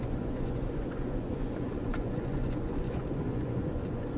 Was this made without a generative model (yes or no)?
no